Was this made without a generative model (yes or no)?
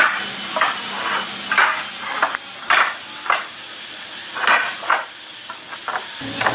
yes